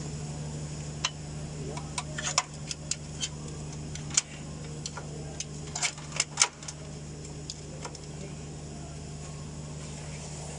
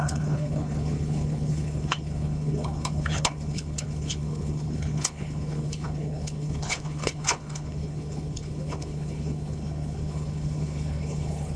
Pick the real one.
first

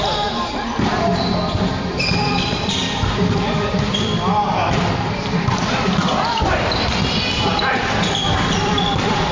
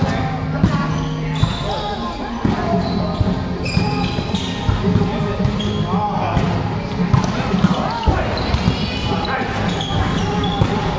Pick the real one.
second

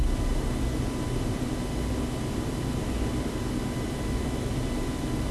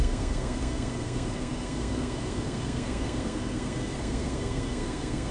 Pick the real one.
first